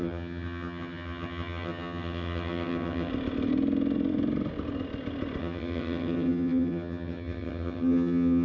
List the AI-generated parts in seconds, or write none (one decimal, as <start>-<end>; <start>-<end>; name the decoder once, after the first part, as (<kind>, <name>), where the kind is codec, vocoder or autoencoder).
0.0-3.1 (vocoder, HiFi-GAN); 5.4-8.4